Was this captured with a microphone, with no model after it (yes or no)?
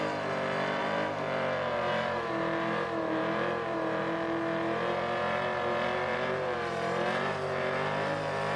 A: no